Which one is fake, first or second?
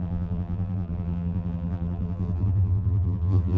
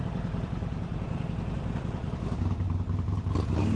first